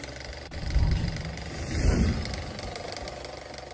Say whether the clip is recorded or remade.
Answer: recorded